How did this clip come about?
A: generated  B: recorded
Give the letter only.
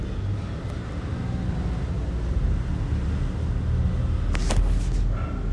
B